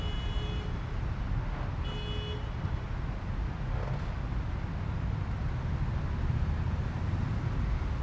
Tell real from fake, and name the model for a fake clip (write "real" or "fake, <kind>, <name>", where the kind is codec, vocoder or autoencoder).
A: real